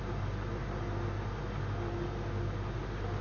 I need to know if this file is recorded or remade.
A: recorded